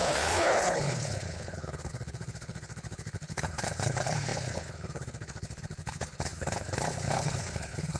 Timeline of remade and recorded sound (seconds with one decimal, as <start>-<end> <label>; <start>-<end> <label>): 0.0-8.0 remade